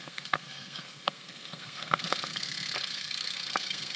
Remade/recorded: remade